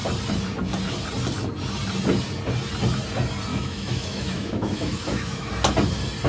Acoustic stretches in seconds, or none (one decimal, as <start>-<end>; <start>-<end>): 0.0-3.5; 5.5-6.3